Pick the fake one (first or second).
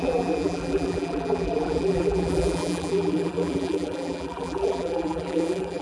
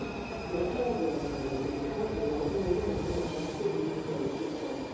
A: first